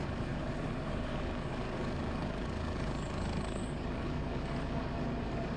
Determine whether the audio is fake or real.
fake